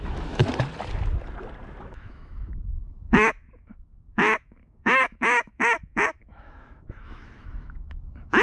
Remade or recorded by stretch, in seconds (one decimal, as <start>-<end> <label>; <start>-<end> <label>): 0.0-0.4 remade; 0.4-1.8 recorded; 1.8-8.4 remade